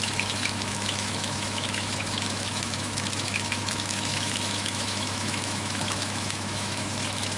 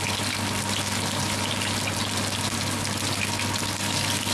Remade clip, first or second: first